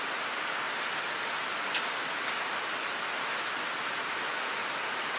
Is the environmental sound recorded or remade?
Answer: recorded